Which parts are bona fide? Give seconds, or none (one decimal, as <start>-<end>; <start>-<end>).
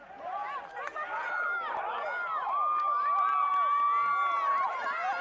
0.0-5.2